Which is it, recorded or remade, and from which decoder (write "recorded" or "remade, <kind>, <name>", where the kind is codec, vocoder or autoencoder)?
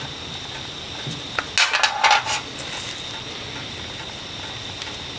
recorded